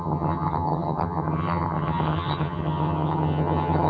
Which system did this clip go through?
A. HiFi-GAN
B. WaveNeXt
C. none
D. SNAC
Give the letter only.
A